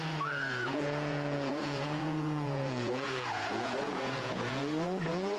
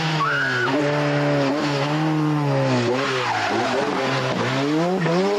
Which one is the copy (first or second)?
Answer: first